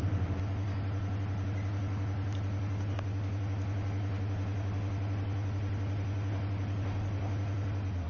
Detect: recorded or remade recorded